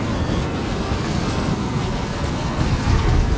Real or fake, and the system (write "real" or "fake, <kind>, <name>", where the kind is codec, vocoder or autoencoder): fake, codec, SNAC